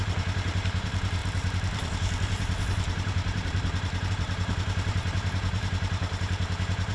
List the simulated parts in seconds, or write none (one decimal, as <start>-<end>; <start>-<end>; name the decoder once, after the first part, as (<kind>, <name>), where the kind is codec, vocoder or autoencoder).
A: 0.0-6.9 (vocoder, BigVGAN v2)